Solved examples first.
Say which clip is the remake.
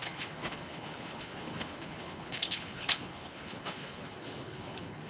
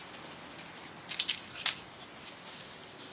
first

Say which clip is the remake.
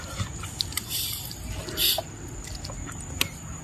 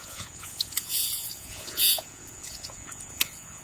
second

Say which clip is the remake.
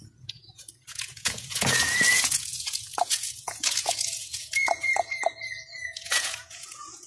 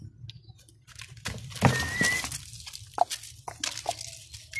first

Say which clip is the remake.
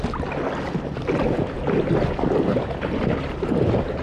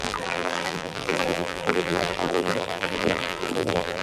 second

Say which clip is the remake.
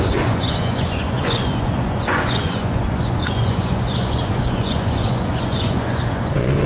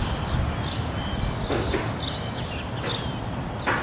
first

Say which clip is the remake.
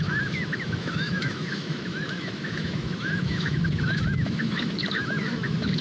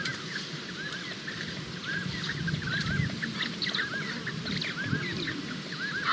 first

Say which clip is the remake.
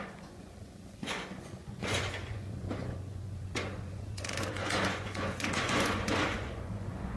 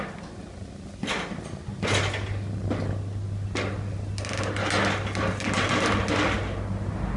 first